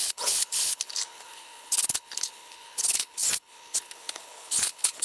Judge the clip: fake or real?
fake